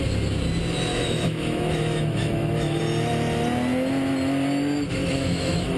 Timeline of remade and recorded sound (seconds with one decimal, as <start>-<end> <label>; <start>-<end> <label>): 0.0-0.9 recorded; 0.9-2.8 remade; 2.8-5.0 recorded; 5.0-5.8 remade

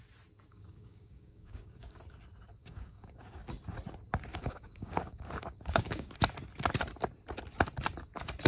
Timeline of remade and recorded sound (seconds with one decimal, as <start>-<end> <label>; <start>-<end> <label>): 0.0-0.5 recorded; 0.5-2.0 remade; 2.0-2.6 recorded; 2.6-3.4 remade; 3.4-4.3 recorded; 4.3-6.1 remade; 6.1-8.5 recorded

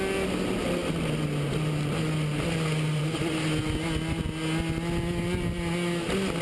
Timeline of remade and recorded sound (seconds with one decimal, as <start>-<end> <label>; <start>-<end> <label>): 0.0-6.4 recorded

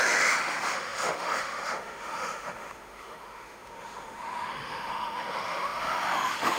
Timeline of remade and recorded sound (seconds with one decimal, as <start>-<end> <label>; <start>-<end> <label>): 0.0-6.6 remade